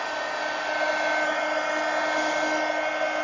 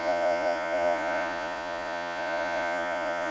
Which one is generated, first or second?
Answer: second